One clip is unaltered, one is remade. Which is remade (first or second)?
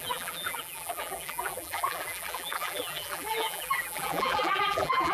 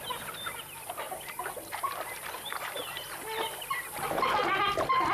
first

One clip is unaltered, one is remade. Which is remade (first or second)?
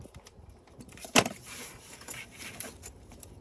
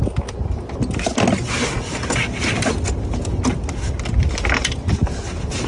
first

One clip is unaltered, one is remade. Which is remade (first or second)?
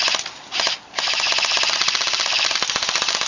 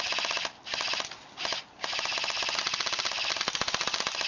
first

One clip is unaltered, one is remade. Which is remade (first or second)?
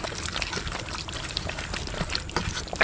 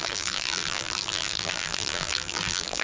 second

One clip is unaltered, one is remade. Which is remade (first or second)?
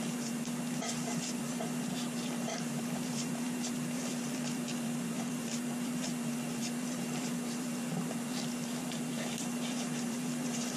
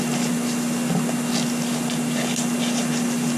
first